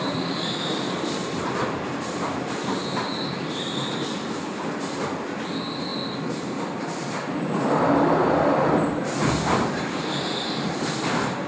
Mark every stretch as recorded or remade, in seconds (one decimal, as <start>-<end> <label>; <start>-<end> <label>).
0.0-2.8 remade; 2.8-5.4 recorded; 5.4-11.5 remade